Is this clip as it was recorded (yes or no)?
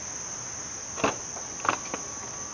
yes